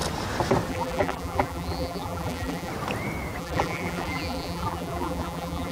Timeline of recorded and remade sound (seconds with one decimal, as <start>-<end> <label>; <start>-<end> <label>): 0.0-0.7 recorded; 0.7-2.7 remade; 2.7-3.4 recorded; 3.4-5.7 remade